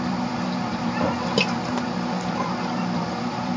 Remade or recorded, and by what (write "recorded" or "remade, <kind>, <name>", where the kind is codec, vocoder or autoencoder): remade, vocoder, BigVGAN v2